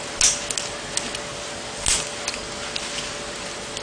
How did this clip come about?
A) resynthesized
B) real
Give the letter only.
B